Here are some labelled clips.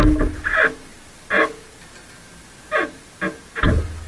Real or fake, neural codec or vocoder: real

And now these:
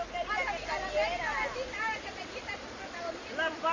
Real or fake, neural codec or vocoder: real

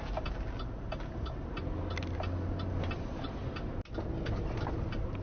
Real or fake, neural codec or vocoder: real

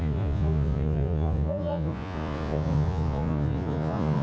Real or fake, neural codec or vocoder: fake, vocoder, Vocos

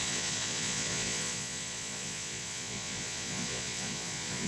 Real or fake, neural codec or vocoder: fake, vocoder, Vocos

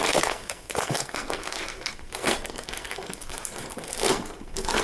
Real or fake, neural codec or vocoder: fake, codec, SNAC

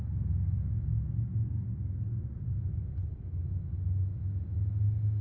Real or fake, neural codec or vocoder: real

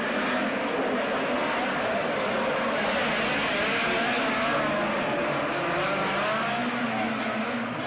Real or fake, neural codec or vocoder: real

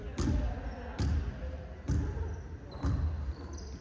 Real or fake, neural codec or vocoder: real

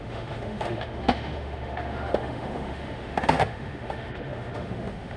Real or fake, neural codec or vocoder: fake, autoencoder, DAC-VAE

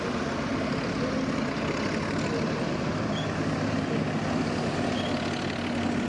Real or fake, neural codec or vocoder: real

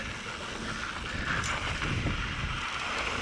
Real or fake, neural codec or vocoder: real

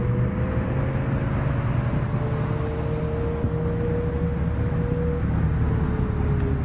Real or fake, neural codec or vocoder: real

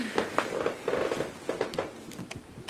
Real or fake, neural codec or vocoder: real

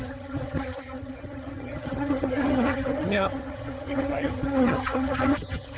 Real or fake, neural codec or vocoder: fake, vocoder, HiFi-GAN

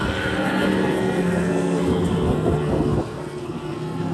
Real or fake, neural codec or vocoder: fake, codec, SNAC